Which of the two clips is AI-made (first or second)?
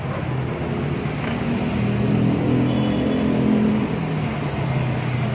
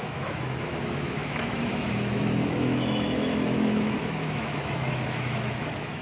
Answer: second